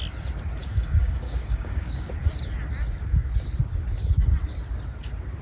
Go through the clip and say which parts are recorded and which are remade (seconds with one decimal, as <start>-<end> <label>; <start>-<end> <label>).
0.0-0.6 recorded; 0.6-2.1 remade; 2.1-5.4 recorded